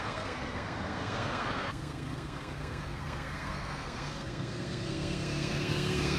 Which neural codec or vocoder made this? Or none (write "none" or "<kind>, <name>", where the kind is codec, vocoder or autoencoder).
codec, SNAC